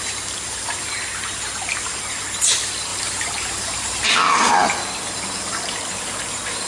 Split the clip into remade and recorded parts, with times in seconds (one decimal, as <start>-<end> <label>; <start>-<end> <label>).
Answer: 0.0-2.9 recorded; 2.9-4.1 remade; 4.1-6.7 recorded